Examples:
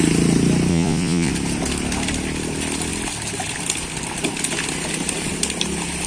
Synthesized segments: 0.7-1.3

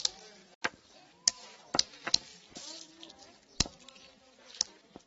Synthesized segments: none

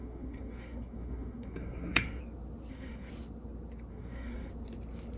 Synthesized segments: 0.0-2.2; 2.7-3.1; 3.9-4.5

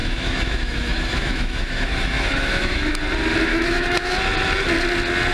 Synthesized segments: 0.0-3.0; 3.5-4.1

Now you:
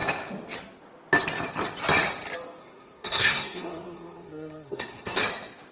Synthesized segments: 2.6-5.2

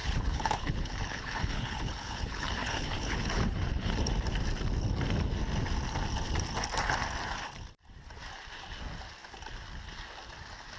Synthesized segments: 0.0-3.9

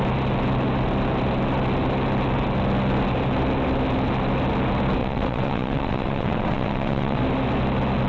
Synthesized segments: 5.0-7.2

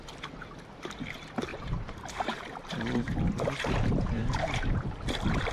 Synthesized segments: 1.5-4.8